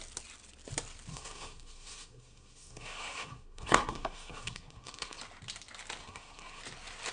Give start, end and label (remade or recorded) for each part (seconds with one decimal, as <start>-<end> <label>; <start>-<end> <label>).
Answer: 0.0-1.1 recorded; 1.1-5.2 remade; 5.2-6.0 recorded; 6.0-6.6 remade; 6.6-7.1 recorded